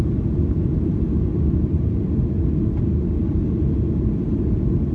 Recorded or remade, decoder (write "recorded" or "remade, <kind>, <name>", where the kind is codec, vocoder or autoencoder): recorded